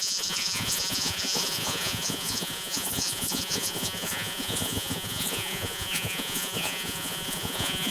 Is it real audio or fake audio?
fake